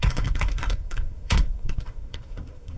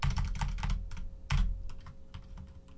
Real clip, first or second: second